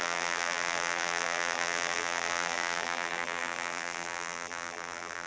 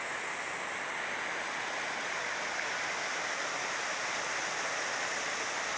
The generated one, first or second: first